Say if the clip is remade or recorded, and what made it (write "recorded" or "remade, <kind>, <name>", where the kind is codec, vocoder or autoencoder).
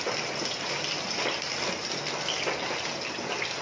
recorded